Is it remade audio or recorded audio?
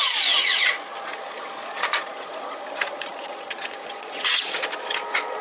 remade